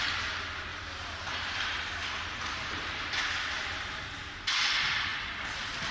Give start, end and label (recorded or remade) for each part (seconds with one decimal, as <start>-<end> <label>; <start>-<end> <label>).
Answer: 0.0-0.7 recorded; 0.7-4.2 remade; 4.2-5.9 recorded